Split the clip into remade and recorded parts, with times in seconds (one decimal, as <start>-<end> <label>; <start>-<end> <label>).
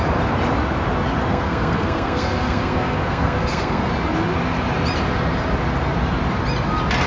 0.0-1.3 recorded; 1.3-3.9 remade; 3.9-7.1 recorded